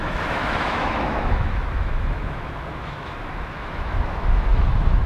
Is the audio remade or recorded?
remade